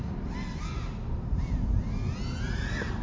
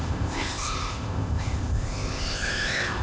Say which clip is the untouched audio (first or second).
first